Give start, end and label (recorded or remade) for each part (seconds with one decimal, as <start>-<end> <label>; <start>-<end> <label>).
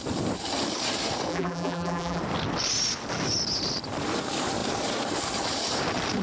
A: 0.0-1.3 recorded; 1.3-2.2 remade; 2.2-6.2 recorded